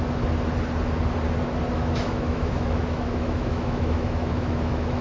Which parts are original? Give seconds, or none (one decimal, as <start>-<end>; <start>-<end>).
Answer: 0.0-1.7